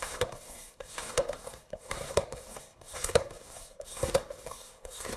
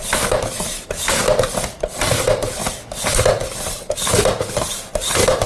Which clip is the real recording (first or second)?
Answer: second